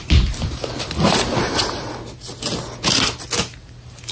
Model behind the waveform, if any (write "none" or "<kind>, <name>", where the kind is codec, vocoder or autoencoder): none